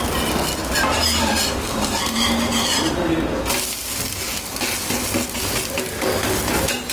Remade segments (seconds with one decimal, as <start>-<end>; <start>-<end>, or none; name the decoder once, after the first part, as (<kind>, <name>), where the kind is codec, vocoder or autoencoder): 0.0-4.3 (vocoder, BigVGAN v2); 6.2-6.9